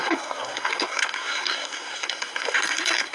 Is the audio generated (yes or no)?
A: yes